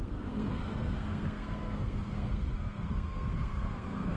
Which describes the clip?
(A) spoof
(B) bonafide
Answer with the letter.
A